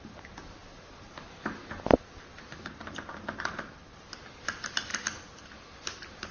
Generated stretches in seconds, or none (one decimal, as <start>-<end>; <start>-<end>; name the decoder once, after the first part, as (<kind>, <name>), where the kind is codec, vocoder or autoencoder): none